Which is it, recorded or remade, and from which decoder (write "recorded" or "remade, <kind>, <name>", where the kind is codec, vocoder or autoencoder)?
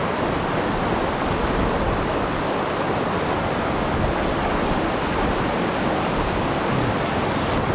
recorded